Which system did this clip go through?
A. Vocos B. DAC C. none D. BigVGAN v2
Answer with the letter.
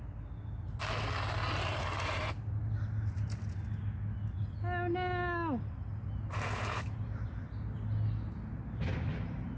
C